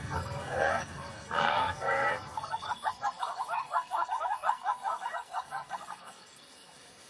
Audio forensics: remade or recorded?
remade